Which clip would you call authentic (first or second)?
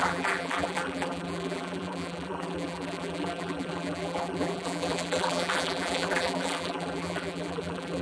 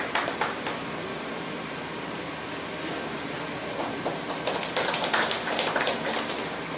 second